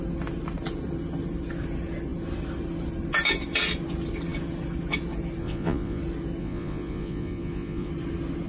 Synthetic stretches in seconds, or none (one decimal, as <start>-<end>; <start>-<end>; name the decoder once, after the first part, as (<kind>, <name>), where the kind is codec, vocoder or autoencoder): 5.4-6.0 (vocoder, Vocos); 6.4-7.9